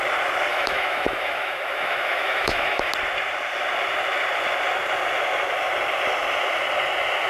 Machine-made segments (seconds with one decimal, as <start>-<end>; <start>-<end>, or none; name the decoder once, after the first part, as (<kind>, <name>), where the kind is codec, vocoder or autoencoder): 0.5-2.9 (autoencoder, DAC-VAE)